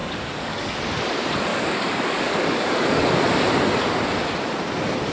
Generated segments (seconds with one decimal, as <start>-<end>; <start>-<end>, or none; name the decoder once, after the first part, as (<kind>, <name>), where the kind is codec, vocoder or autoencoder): 0.0-0.8 (codec, DAC); 1.5-3.1

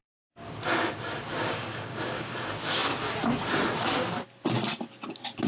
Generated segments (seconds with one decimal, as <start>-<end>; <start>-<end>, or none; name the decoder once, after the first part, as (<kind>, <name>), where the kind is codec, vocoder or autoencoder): 1.3-2.3 (codec, DAC)